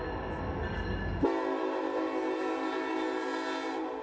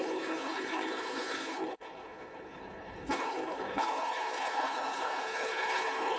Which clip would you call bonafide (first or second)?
first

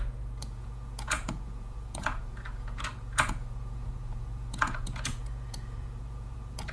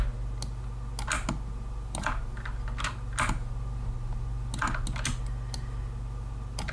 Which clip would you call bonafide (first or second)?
second